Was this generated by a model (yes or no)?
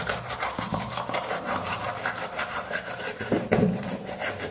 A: yes